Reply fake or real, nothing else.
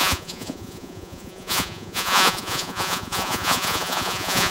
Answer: fake